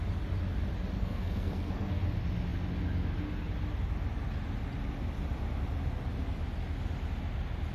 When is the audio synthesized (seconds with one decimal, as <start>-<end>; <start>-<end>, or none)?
1.0-2.0